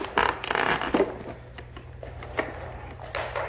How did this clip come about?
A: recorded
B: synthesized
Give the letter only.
A